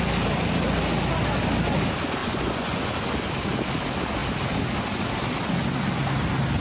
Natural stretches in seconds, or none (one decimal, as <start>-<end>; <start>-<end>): 0.0-2.2; 2.8-6.6